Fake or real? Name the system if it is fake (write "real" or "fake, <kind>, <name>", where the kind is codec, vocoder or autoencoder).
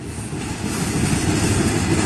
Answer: real